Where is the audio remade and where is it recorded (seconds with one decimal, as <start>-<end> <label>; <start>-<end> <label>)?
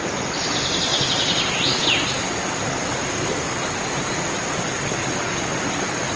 0.0-6.2 recorded